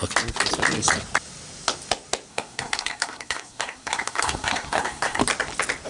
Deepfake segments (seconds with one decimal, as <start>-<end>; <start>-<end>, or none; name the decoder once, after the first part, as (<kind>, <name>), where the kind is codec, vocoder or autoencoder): 2.3-5.2 (codec, SNAC)